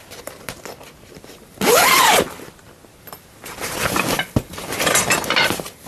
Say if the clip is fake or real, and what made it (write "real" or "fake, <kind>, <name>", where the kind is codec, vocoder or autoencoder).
real